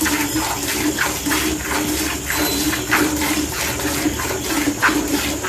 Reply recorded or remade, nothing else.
recorded